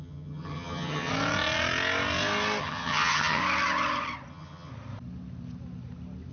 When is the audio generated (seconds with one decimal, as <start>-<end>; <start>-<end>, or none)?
0.0-1.1; 2.6-3.4; 4.3-4.7